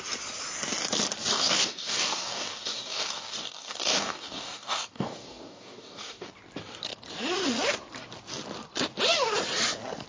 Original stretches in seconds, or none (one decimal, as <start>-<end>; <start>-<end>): 0.0-1.3; 6.3-10.1